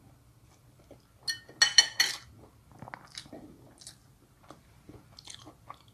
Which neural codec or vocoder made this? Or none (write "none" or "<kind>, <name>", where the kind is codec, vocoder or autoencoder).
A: none